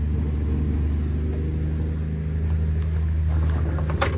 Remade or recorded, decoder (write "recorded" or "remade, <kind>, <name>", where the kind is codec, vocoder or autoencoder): recorded